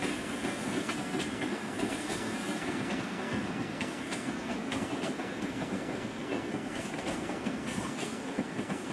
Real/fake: fake